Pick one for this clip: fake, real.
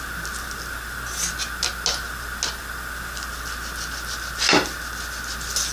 real